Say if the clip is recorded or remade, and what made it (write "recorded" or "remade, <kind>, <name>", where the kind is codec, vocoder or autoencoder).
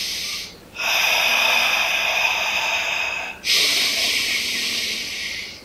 recorded